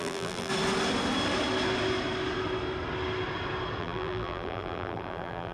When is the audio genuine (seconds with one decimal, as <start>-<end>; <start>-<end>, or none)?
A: 0.5-3.8